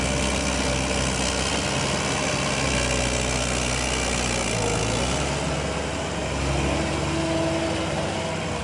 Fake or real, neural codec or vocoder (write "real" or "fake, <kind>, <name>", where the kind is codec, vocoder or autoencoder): real